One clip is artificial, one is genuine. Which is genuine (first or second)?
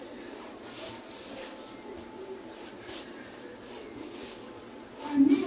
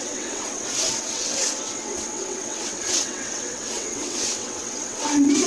first